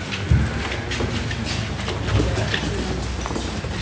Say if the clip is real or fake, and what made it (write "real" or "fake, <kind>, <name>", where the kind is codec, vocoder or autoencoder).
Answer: real